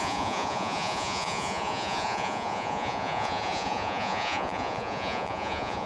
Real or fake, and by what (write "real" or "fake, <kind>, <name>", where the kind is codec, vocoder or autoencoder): fake, vocoder, Vocos